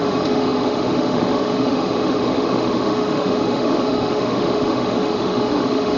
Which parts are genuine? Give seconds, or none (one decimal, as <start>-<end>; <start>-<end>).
none